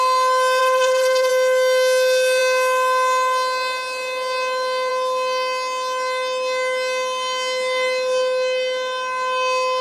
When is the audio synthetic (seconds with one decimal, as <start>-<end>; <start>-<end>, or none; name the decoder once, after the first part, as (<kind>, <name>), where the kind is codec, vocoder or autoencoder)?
0.6-1.3 (vocoder, BigVGAN v2)